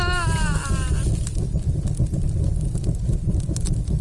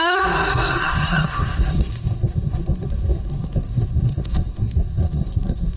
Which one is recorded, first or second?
first